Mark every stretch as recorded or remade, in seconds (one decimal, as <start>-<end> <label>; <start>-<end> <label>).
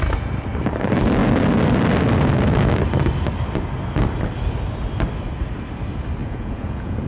0.0-6.2 recorded; 6.2-7.1 remade